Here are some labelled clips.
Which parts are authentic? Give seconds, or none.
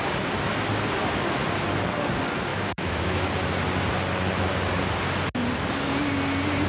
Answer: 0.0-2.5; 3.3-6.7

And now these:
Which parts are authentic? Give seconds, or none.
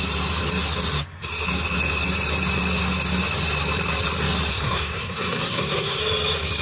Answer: 0.0-4.5; 6.0-6.6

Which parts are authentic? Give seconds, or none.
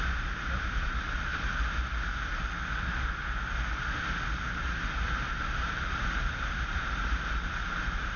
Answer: 1.3-5.4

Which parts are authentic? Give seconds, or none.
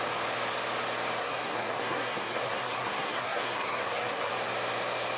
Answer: 0.0-1.2; 4.3-5.2